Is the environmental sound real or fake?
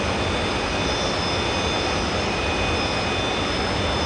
real